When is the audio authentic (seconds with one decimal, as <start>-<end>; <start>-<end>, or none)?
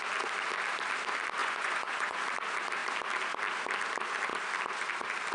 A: 0.0-1.4; 2.2-5.3